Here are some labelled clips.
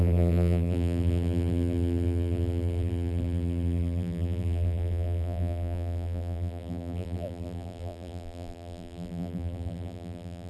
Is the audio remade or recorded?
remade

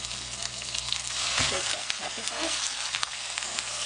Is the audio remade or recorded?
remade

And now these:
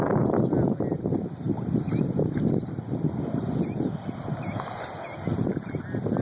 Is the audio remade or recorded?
recorded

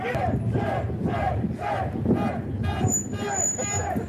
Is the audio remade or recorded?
recorded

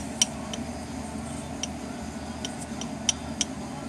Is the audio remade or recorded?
recorded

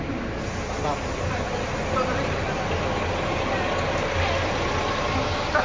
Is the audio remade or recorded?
recorded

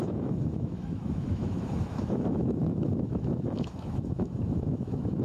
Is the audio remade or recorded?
remade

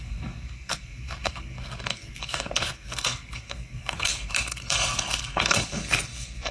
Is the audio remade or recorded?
remade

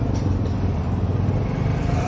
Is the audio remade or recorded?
recorded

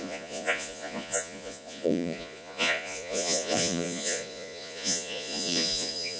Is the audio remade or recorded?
remade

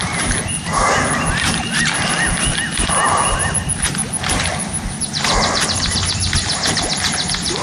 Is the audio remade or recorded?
recorded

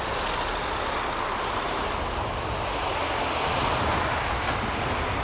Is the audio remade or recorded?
recorded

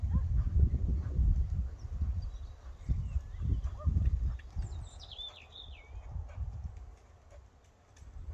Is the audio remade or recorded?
recorded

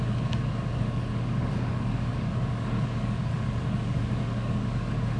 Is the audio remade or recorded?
remade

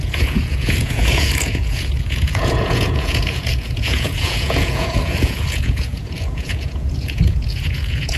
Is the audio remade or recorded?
remade